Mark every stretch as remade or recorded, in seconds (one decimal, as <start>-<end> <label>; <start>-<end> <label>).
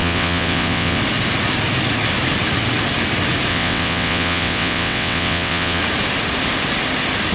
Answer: 0.0-1.0 remade; 1.0-3.5 recorded; 3.5-5.8 remade; 5.8-7.3 recorded